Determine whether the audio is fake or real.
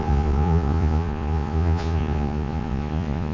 fake